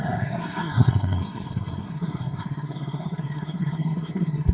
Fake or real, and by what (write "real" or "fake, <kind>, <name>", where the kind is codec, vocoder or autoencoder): fake, codec, SNAC